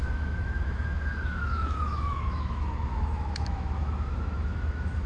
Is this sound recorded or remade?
remade